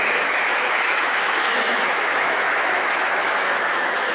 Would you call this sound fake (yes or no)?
yes